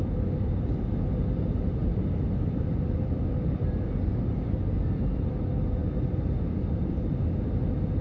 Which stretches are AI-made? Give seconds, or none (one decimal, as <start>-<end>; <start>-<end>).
1.8-4.8